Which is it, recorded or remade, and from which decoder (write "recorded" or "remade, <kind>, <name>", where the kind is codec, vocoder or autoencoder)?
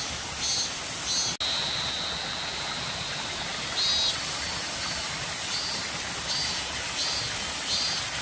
recorded